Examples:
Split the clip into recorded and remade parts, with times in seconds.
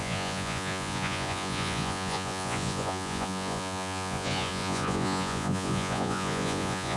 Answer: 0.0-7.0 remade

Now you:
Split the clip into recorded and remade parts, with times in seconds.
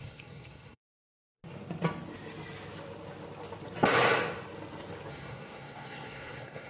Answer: 0.0-1.4 remade; 1.4-5.1 recorded; 5.1-6.7 remade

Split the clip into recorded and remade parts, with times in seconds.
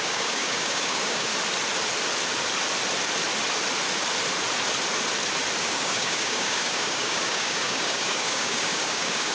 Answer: 0.0-1.3 remade; 1.3-5.6 recorded; 5.6-9.3 remade